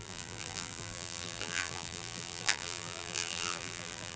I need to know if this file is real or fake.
fake